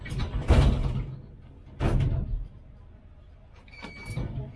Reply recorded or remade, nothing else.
recorded